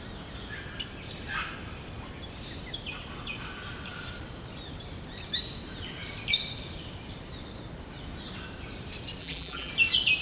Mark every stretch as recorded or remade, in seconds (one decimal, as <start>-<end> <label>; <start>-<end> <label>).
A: 0.0-9.2 recorded; 9.2-9.7 remade; 9.7-10.2 recorded